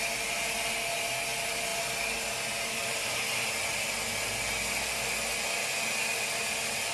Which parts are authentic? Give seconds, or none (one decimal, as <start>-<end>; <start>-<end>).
0.0-6.9